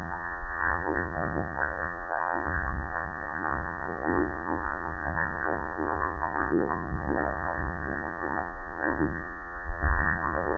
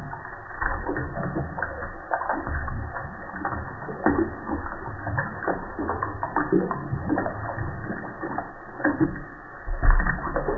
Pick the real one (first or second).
second